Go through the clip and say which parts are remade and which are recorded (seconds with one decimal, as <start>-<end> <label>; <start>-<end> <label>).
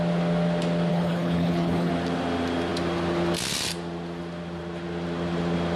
0.0-0.9 recorded; 0.9-1.9 remade; 1.9-5.8 recorded